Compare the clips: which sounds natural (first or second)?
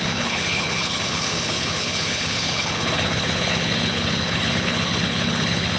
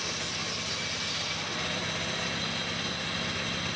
second